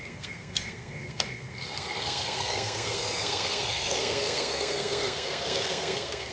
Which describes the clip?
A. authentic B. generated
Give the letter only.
B